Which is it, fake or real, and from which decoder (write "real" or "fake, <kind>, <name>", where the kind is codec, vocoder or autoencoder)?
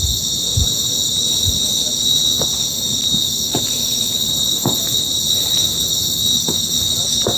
real